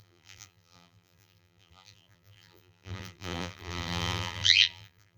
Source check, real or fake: fake